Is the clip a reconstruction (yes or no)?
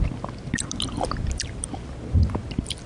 no